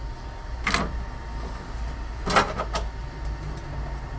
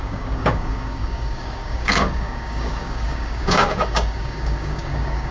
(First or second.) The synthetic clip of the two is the second